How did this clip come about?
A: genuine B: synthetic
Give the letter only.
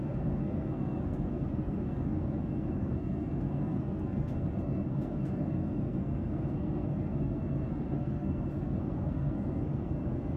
B